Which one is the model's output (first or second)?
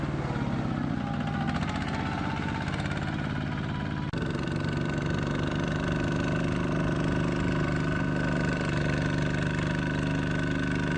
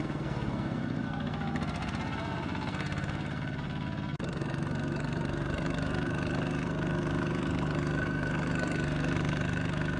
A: second